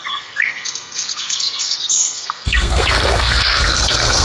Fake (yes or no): yes